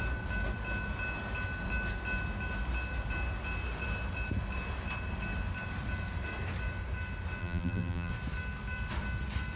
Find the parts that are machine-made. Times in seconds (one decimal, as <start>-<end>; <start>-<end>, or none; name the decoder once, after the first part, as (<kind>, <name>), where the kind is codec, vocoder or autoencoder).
7.4-8.1 (vocoder, BigVGAN v2)